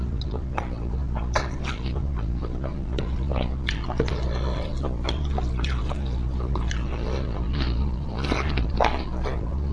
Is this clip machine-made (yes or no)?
yes